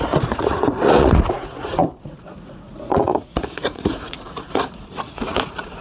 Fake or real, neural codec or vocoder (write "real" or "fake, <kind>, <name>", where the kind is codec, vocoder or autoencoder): fake, vocoder, Vocos